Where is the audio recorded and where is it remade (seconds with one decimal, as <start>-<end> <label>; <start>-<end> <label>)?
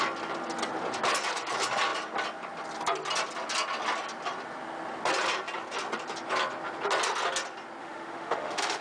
0.0-7.8 recorded; 7.8-8.8 remade